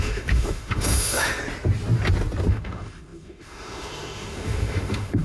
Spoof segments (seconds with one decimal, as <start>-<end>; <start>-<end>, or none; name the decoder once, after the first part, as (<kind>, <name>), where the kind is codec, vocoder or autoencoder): 0.0-1.4 (autoencoder, DAC-VAE); 2.5-5.2